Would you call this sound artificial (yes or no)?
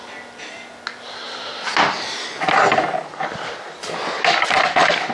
no